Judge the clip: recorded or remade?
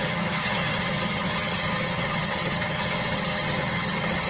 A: remade